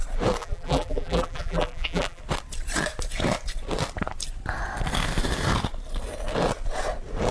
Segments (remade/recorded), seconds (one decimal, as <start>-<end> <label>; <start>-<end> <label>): 0.0-0.4 recorded; 0.4-2.2 remade; 2.2-7.3 recorded